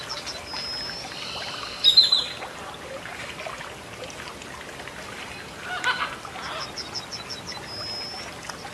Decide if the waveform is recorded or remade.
recorded